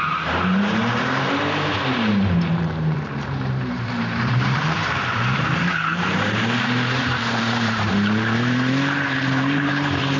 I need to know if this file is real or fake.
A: fake